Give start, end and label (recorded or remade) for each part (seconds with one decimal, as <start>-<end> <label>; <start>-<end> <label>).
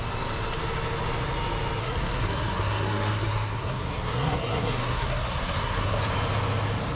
0.0-1.8 recorded; 1.8-6.0 remade; 6.0-7.0 recorded